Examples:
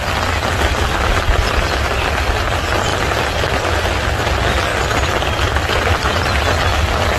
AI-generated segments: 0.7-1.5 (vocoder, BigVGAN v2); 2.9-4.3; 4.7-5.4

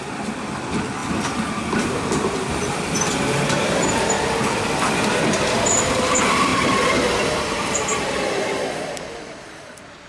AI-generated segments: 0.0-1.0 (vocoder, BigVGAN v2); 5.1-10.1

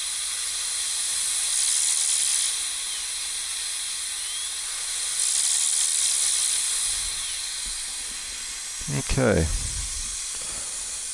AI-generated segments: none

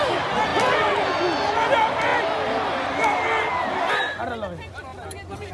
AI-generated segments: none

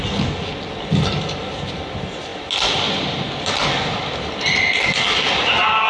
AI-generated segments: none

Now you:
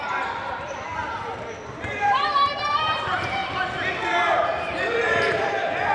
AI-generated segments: 0.0-1.0 (vocoder, BigVGAN v2); 2.0-3.4; 4.2-5.9

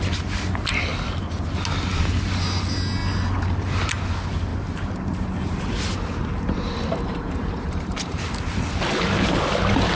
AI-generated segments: 4.5-5.6 (vocoder, BigVGAN v2); 6.2-8.2